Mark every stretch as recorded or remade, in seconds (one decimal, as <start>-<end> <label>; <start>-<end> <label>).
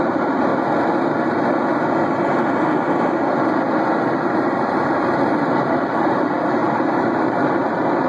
0.0-0.5 remade; 0.5-4.3 recorded; 4.3-8.1 remade